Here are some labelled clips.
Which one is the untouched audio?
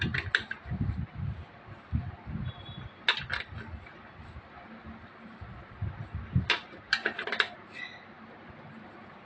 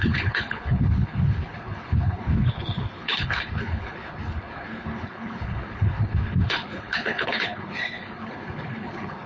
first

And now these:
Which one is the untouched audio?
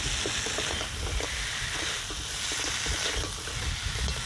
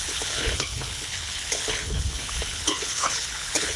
first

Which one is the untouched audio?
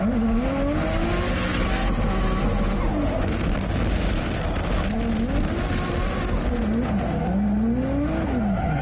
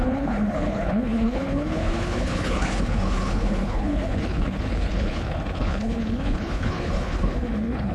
first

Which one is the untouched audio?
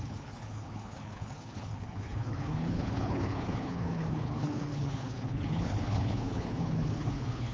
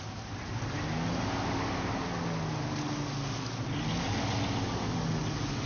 second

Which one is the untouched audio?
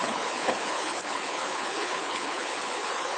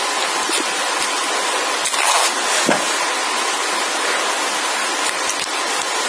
second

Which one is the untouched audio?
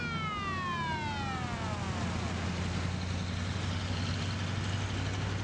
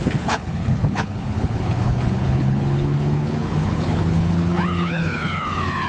first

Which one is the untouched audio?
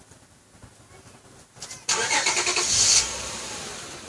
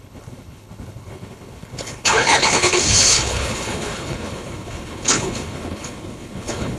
first